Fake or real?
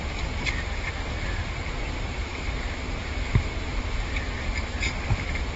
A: real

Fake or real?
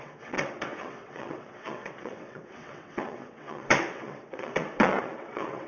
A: fake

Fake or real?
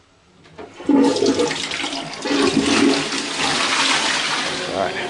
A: real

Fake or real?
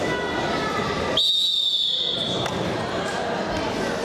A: real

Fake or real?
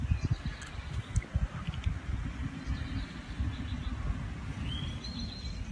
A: real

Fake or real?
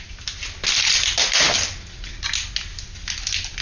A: real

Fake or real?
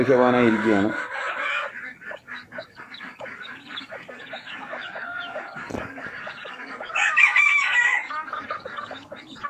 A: fake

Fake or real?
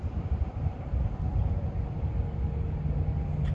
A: real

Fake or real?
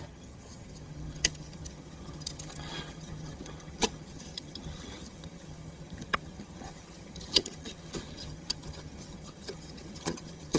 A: fake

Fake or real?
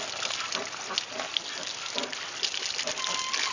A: real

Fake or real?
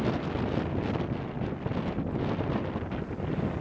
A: real